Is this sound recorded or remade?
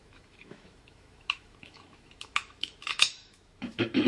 remade